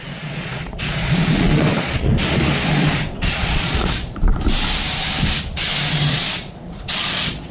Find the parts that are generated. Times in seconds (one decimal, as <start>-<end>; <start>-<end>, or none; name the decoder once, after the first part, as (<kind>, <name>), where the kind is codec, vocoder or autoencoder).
0.0-2.1 (vocoder, Vocos); 3.2-4.3; 6.1-7.5